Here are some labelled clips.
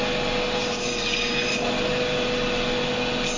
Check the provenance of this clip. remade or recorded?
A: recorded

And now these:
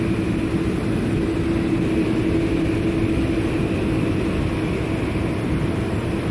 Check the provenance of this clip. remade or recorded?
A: recorded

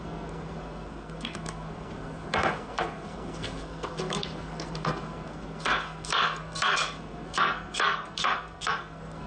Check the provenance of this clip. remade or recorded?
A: remade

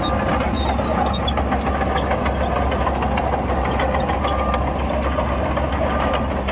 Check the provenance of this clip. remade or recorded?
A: recorded